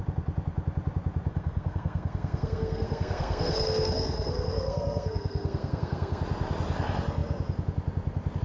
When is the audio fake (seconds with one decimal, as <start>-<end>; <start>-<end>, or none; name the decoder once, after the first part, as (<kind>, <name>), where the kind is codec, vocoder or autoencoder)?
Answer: 1.3-6.2 (codec, SNAC)